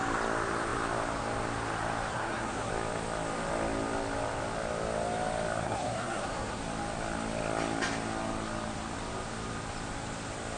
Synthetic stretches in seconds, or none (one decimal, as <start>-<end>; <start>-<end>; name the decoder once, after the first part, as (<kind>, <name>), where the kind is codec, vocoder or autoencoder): 2.1-2.7 (codec, SNAC); 5.6-6.6